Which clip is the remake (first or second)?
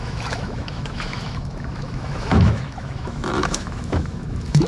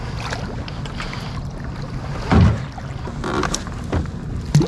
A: first